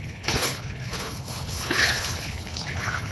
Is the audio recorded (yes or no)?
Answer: no